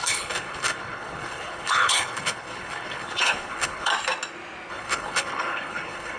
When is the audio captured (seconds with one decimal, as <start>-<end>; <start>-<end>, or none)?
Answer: 3.9-4.7